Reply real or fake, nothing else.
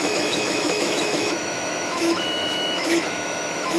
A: fake